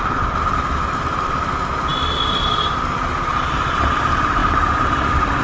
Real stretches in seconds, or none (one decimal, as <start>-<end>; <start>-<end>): 0.0-5.4